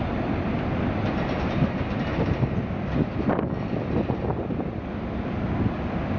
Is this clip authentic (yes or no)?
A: yes